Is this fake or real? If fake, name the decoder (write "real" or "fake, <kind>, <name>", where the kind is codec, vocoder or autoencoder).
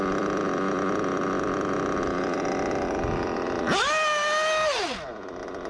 real